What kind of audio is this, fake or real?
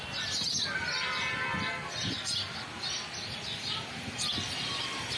real